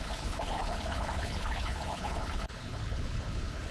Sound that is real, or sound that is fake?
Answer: fake